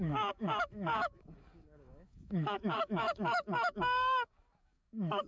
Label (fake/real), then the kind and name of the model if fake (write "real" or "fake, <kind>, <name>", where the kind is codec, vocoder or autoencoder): fake, codec, DAC